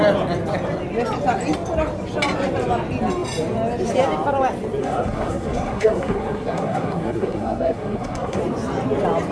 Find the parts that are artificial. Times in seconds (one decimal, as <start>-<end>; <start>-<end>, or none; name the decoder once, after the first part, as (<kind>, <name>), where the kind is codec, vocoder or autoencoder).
4.8-8.4 (codec, SNAC)